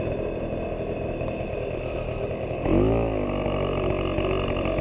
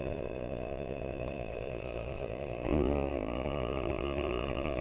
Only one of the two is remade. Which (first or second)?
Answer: second